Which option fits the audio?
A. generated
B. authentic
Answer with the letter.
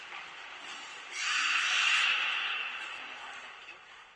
B